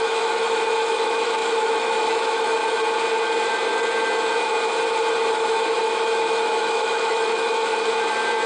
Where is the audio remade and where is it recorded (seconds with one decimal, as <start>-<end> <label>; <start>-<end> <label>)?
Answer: 0.0-2.6 remade; 2.6-5.3 recorded; 5.3-7.7 remade; 7.7-8.5 recorded